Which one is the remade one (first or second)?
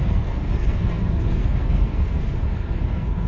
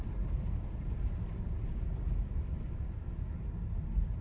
first